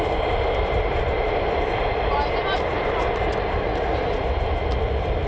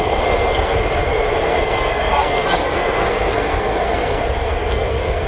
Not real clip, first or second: second